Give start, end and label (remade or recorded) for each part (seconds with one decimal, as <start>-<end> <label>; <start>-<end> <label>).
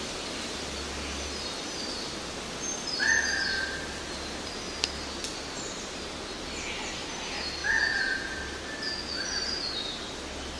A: 0.0-7.6 recorded; 7.6-8.4 remade; 8.4-10.6 recorded